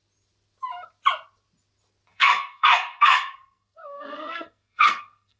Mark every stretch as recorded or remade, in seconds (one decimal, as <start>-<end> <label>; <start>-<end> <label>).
0.0-2.1 recorded; 2.1-5.4 remade